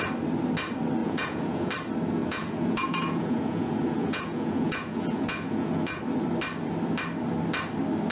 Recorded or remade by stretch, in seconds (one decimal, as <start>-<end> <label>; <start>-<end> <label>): 0.0-1.0 recorded; 1.0-1.7 remade; 1.7-2.2 recorded; 2.2-6.0 remade; 6.0-8.1 recorded